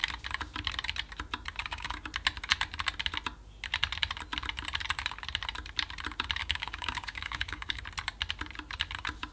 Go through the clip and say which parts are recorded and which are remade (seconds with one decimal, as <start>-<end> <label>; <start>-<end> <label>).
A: 0.0-1.6 recorded; 1.6-2.1 remade; 2.1-6.4 recorded; 6.4-7.8 remade; 7.8-9.3 recorded